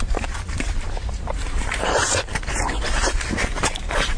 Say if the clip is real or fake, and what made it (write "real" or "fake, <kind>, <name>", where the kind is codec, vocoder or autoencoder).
fake, vocoder, BigVGAN v2